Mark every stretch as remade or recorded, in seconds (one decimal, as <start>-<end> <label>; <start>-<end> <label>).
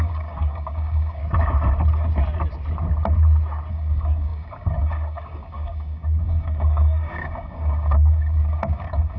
0.0-1.2 remade; 1.2-3.7 recorded; 3.7-9.2 remade